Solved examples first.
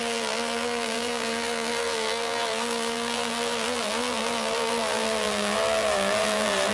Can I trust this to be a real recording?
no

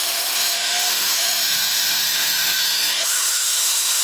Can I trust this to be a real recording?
no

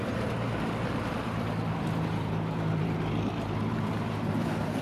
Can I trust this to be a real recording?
no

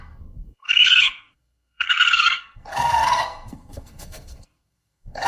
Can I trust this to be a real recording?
no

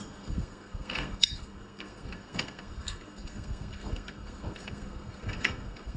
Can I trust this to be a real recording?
no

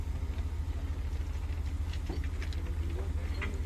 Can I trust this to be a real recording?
yes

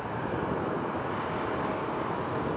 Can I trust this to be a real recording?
yes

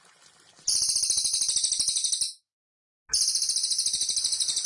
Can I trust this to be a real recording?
yes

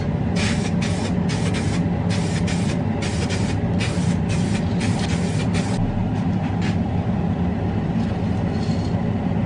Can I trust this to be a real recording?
yes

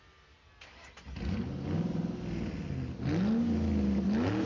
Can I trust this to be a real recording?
yes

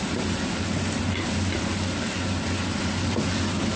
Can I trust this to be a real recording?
yes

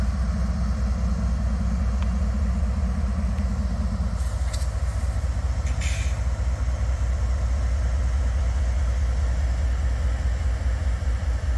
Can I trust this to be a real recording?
yes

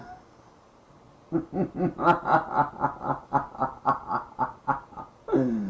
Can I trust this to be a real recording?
yes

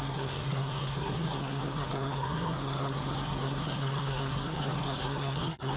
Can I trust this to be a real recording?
no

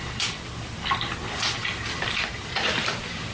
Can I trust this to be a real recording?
yes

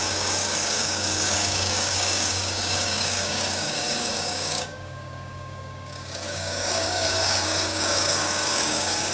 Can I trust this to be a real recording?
no